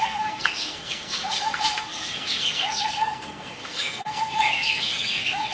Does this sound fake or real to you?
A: fake